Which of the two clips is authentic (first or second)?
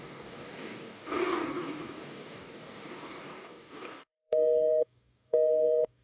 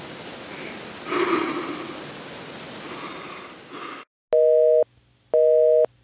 second